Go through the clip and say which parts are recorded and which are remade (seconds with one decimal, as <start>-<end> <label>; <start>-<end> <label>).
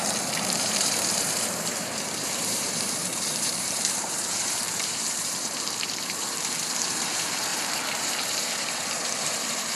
0.0-9.8 remade